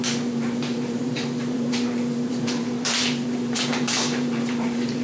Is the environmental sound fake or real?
fake